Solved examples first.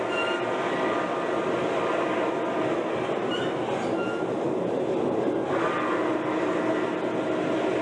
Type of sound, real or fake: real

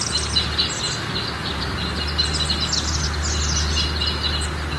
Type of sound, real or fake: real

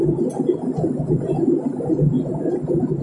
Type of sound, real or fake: real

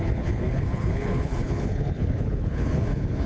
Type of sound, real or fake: fake